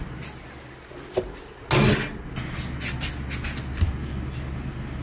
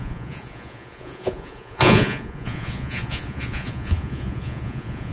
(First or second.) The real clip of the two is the first